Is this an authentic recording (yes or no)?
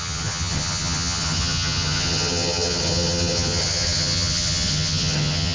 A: no